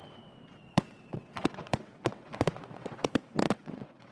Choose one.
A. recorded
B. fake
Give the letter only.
B